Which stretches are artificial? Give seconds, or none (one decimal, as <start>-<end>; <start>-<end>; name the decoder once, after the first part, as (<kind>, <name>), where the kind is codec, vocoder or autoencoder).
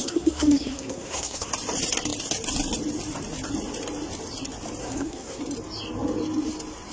0.0-1.5 (codec, SNAC); 4.8-5.4